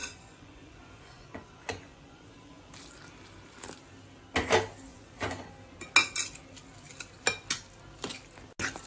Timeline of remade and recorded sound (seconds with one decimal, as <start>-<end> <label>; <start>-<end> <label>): 0.0-2.7 remade; 2.7-4.9 recorded; 4.9-5.5 remade; 5.5-8.9 recorded